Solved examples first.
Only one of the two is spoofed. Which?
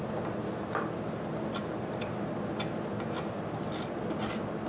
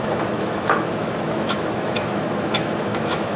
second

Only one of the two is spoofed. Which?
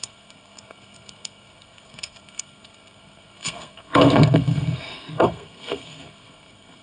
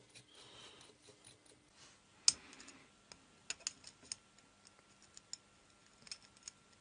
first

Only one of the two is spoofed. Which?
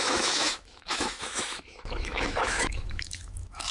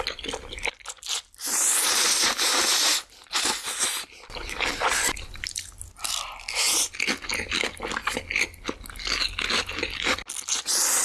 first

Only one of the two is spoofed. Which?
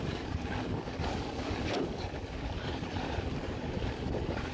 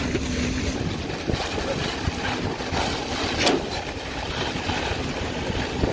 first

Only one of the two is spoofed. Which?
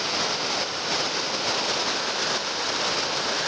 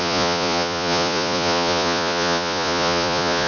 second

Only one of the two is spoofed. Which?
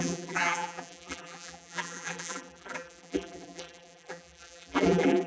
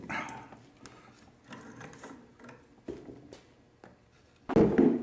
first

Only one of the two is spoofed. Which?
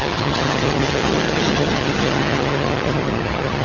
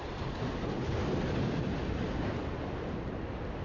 first